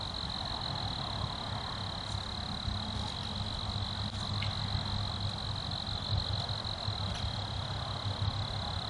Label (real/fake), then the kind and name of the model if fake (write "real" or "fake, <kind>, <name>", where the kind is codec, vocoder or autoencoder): real